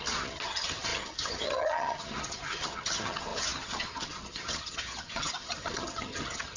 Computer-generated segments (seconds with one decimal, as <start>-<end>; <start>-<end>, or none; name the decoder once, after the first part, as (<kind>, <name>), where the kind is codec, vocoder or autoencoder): 0.0-6.6 (vocoder, HiFi-GAN)